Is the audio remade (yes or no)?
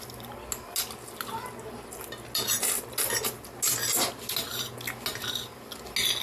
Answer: no